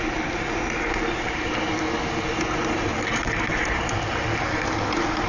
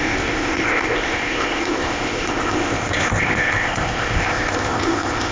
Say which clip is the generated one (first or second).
second